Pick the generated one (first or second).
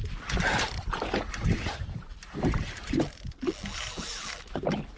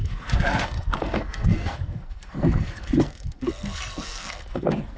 second